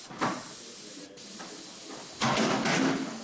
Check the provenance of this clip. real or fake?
real